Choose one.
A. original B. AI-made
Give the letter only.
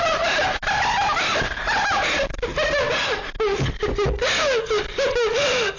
A